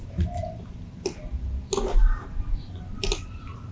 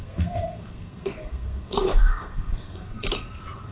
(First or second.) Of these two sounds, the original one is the first